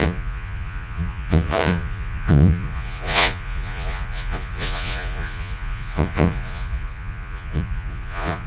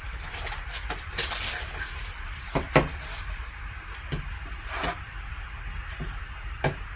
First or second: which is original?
second